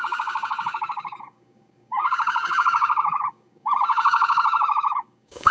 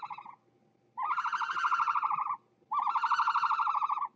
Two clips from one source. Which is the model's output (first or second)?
first